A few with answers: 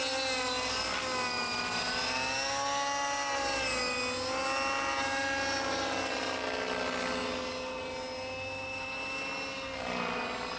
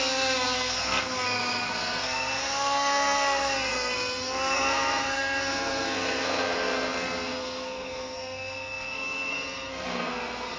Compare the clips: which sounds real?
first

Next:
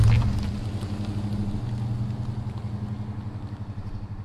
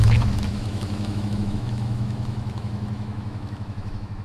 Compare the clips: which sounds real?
first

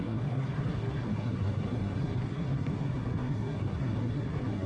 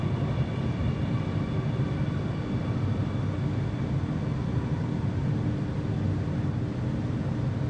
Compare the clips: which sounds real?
second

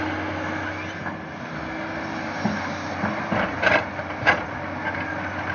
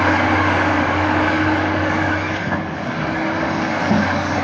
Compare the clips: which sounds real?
first